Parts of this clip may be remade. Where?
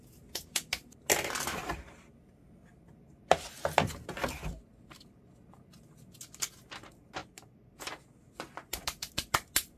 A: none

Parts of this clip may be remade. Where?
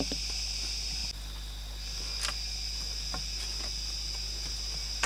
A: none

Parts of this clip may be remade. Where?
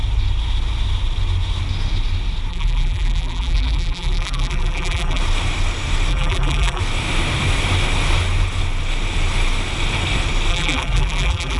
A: 2.5-5.2 (vocoder, BigVGAN v2); 6.1-6.8; 10.5-11.6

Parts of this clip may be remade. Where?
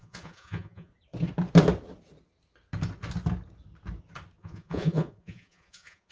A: 0.0-0.9 (vocoder, Vocos); 4.4-6.1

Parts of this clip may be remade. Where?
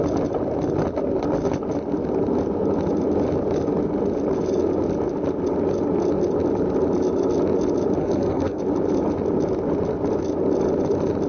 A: 8.0-8.6 (codec, SNAC)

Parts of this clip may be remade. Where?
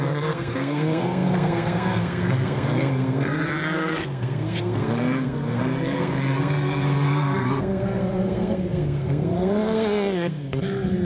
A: 0.0-11.0 (codec, SNAC)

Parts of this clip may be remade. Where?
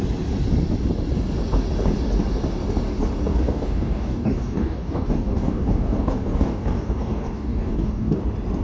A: 3.3-8.2 (codec, DAC)